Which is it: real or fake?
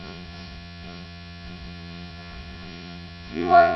fake